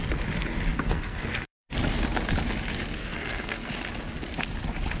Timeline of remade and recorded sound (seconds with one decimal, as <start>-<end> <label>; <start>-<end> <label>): 0.0-0.7 recorded; 0.7-1.7 remade; 1.7-3.0 recorded; 3.0-3.7 remade; 3.7-5.0 recorded